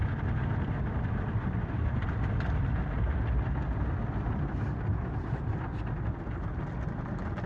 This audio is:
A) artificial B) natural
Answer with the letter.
B